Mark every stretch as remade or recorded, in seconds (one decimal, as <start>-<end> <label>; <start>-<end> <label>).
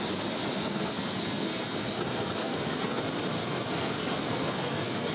0.0-0.6 recorded; 0.6-3.0 remade; 3.0-3.4 recorded; 3.4-5.1 remade